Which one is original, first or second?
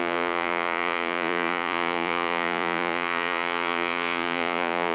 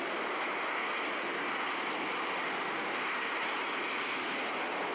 second